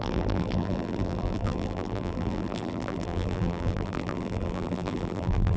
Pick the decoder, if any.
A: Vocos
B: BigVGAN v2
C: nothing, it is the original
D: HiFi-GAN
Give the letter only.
B